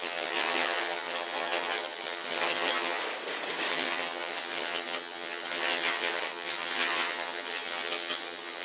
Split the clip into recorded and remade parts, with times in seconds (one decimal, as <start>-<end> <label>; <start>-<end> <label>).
0.0-3.0 remade; 3.0-3.7 recorded; 3.7-8.6 remade